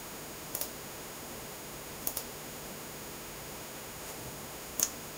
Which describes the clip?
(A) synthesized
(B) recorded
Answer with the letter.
A